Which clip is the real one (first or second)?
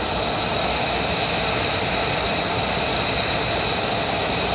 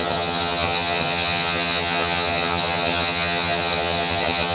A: first